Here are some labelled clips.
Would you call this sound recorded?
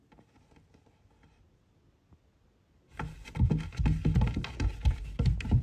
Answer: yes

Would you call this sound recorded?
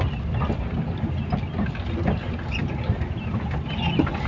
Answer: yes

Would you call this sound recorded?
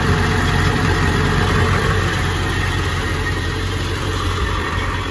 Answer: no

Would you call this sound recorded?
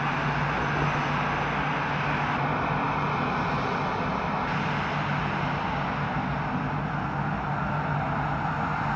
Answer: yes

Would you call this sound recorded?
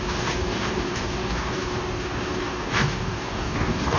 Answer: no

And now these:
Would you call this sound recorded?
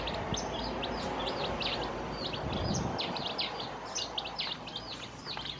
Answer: yes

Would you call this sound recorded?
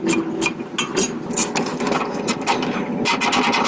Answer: yes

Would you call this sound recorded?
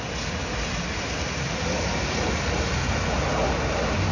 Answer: yes